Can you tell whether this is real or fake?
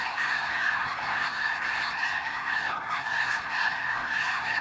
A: fake